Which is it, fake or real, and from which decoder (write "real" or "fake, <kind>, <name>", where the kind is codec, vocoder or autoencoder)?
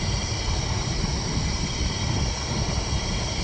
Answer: real